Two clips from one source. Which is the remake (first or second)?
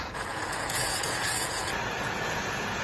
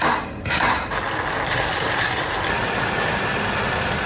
first